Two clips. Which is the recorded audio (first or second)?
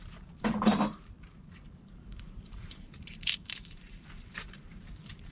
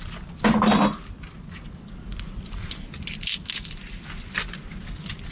second